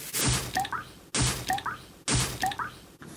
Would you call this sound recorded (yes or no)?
yes